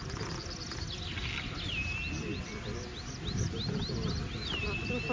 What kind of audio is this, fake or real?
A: real